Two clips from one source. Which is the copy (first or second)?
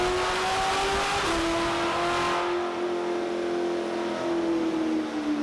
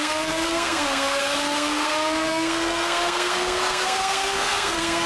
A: second